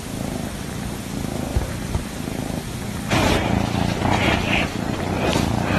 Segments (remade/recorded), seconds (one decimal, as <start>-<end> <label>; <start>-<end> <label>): 0.0-1.5 recorded; 1.5-2.6 remade; 2.6-5.8 recorded